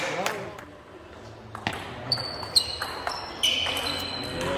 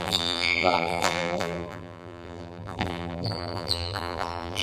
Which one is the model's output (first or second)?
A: second